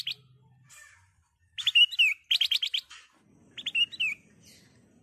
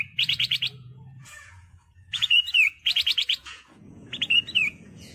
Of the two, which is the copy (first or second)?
second